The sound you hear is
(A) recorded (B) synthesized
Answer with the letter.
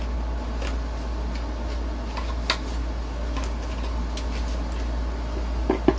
A